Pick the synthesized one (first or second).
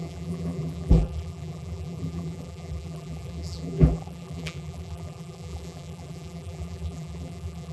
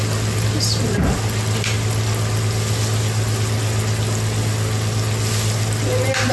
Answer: first